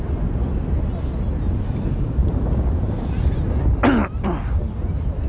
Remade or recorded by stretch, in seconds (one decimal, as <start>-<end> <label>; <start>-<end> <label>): 0.0-5.3 recorded